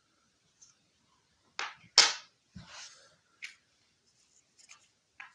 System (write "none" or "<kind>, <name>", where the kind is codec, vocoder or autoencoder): none